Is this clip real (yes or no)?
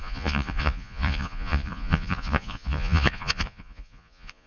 no